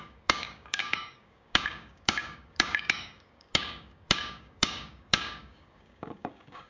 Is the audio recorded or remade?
remade